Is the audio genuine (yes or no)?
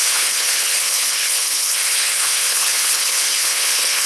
no